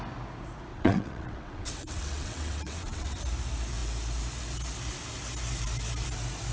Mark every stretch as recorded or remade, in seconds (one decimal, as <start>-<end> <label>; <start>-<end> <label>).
0.0-0.7 recorded; 0.7-3.2 remade; 3.2-6.5 recorded